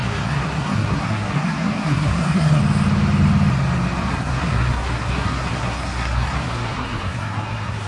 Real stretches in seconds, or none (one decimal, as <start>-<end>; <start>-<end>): 2.6-4.1